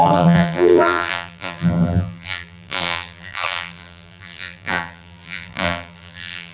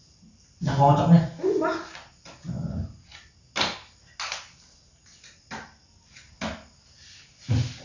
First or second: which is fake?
first